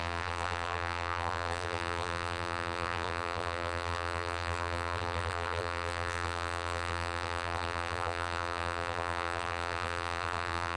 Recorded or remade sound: remade